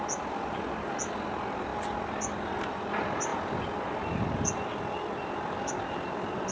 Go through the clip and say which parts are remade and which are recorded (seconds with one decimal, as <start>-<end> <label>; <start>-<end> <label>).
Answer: 0.0-6.5 recorded